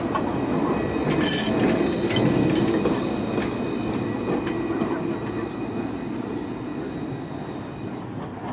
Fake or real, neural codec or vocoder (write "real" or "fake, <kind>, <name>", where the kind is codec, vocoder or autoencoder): real